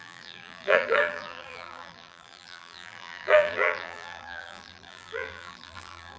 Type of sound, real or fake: fake